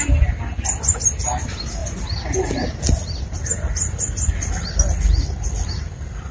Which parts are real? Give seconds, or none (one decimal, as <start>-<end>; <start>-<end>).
0.0-6.3